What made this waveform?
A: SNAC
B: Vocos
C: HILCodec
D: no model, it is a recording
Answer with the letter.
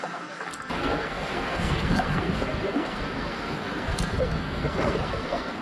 A